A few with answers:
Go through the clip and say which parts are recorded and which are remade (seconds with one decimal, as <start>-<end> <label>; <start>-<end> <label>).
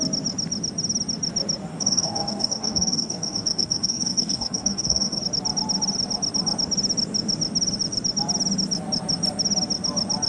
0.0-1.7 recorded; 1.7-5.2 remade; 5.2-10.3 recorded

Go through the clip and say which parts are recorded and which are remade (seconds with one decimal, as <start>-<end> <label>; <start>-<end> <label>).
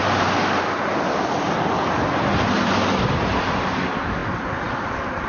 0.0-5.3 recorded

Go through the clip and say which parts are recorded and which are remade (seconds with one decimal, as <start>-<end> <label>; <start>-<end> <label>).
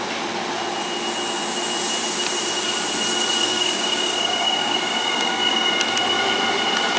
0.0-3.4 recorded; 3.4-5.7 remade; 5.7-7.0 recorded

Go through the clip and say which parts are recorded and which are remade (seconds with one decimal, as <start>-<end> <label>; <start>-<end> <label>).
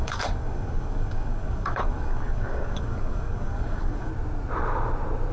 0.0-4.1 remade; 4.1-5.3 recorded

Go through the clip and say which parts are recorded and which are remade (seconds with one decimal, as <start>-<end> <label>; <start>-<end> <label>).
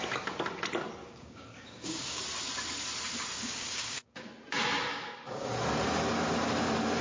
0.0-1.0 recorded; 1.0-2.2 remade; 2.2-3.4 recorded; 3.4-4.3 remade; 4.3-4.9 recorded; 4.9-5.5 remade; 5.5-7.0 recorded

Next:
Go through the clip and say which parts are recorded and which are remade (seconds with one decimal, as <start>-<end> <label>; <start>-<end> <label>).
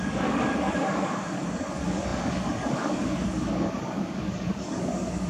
0.0-5.3 remade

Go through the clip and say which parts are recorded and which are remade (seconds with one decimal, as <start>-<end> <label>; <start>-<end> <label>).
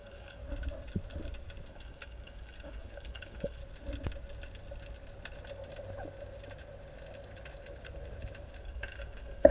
0.0-0.4 remade; 0.4-1.7 recorded; 1.7-3.6 remade; 3.6-8.6 recorded; 8.6-9.5 remade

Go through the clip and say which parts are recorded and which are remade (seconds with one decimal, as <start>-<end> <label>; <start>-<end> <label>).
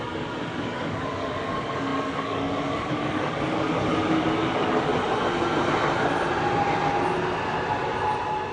0.0-4.9 remade; 4.9-8.5 recorded